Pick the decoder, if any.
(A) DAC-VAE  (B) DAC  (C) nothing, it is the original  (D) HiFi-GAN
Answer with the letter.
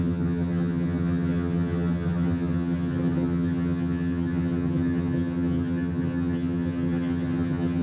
D